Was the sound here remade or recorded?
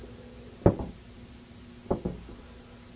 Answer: recorded